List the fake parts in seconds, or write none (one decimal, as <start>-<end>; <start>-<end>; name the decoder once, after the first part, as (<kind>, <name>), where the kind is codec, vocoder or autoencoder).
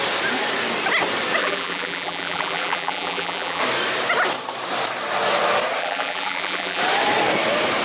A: 1.4-3.6 (vocoder, BigVGAN v2); 5.8-6.8